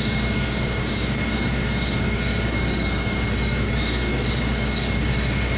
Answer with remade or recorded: remade